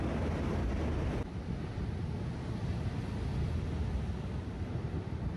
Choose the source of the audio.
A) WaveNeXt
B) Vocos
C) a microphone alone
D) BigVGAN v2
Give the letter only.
C